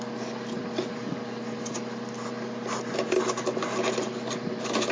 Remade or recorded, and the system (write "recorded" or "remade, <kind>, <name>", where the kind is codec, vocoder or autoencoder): recorded